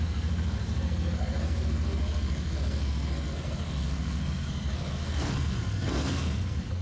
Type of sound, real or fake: fake